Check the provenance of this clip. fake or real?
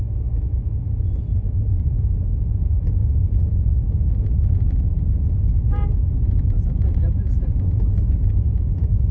fake